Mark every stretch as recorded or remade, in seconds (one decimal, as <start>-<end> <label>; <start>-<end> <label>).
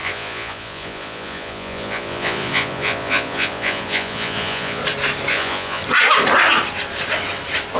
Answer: 0.0-4.8 remade; 4.8-5.3 recorded; 5.3-5.8 remade; 5.8-7.8 recorded